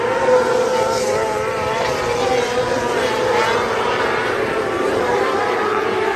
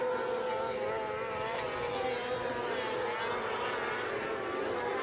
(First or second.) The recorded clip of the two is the second